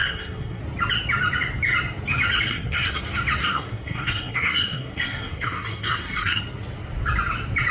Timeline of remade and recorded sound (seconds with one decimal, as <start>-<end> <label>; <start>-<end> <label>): 0.0-0.6 remade; 0.6-2.5 recorded; 2.5-3.0 remade; 3.0-3.4 recorded; 3.4-6.4 remade; 6.4-7.7 recorded